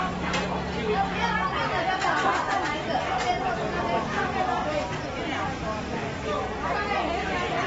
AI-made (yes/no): no